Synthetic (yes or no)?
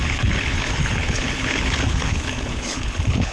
yes